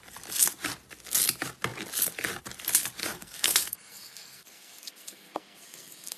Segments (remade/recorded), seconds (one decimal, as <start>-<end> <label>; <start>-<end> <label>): 0.0-3.0 recorded; 3.0-6.2 remade